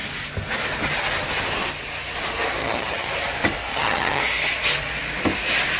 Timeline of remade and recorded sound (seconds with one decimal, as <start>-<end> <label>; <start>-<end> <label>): 0.0-2.6 recorded; 2.6-3.1 remade; 3.1-3.7 recorded; 3.7-4.2 remade; 4.2-5.8 recorded